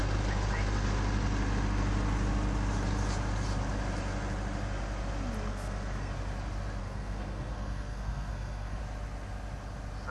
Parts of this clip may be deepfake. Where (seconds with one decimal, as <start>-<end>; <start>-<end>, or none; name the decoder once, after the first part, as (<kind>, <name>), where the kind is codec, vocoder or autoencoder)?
5.5-6.1 (codec, SNAC); 6.8-8.8